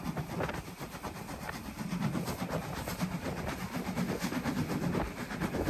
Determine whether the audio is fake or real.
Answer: real